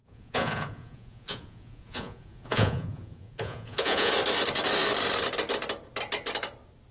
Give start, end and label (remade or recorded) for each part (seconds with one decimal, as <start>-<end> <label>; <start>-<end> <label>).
0.0-4.1 remade; 4.1-6.9 recorded